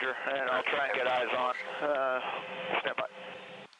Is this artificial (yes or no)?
no